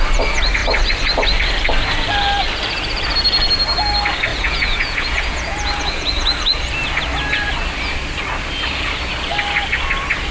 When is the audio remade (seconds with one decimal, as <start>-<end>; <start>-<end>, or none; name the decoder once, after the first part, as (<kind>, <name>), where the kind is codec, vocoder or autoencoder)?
4.3-6.6 (vocoder, Vocos)